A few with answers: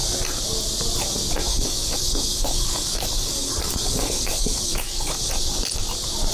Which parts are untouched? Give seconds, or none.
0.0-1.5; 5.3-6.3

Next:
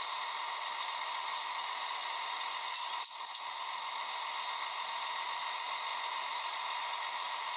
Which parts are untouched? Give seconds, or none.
0.0-7.6

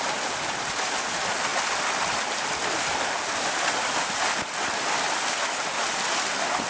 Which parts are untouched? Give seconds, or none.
0.0-6.7

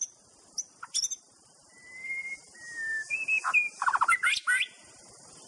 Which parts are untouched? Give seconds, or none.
0.0-5.5

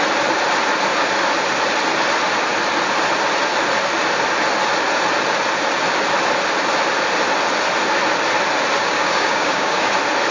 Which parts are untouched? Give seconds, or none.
0.0-8.8; 9.9-10.3

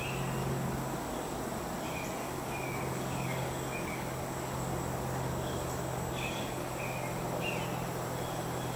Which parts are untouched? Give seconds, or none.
0.0-0.4; 1.4-2.2; 6.8-8.8

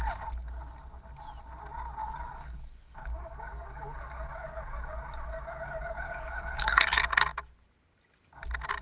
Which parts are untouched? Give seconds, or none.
0.0-2.0; 6.8-8.8